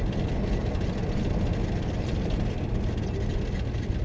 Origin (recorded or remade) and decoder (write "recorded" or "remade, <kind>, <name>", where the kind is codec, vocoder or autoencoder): recorded